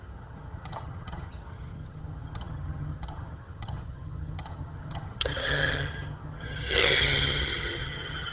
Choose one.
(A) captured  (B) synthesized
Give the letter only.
B